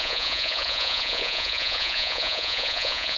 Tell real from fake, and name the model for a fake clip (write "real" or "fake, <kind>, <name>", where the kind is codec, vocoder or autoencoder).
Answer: fake, vocoder, Vocos